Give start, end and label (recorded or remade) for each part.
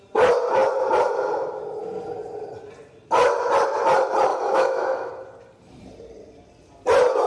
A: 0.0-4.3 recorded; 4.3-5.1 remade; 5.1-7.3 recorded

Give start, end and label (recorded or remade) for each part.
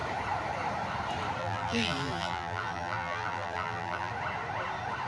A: 0.0-1.4 recorded; 1.4-4.1 remade; 4.1-5.1 recorded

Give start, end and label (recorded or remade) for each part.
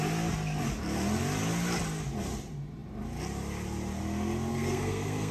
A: 0.0-4.5 recorded; 4.5-5.3 remade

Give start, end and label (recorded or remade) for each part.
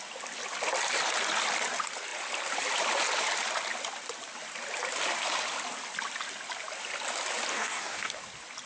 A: 0.0-7.5 recorded; 7.5-8.1 remade; 8.1-8.7 recorded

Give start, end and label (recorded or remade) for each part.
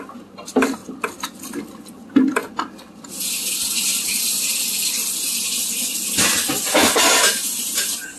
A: 0.0-8.2 recorded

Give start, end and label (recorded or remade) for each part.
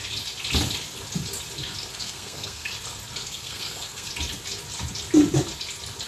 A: 0.0-1.9 recorded; 1.9-2.7 remade; 2.7-3.2 recorded; 3.2-4.1 remade; 4.1-6.1 recorded